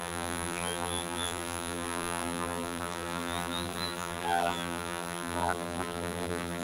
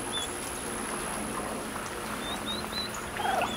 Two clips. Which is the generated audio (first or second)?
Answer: first